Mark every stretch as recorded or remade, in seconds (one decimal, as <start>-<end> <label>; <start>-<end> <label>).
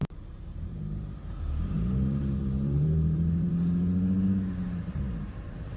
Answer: 0.0-3.5 remade; 3.5-5.8 recorded